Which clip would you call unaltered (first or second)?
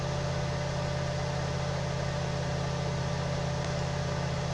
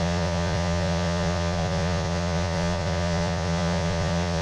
first